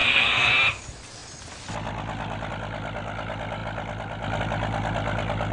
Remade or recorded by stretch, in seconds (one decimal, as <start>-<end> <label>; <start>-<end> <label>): 0.0-0.5 remade; 0.5-5.5 recorded